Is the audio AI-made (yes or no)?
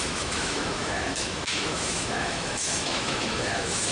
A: yes